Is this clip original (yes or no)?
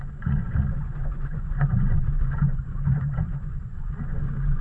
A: no